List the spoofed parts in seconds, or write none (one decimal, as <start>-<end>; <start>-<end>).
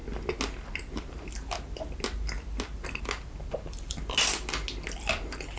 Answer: none